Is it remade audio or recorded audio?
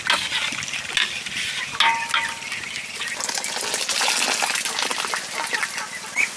recorded